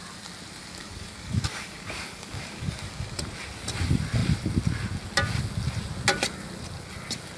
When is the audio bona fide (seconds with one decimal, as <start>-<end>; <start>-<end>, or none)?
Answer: 0.0-0.7; 3.2-7.4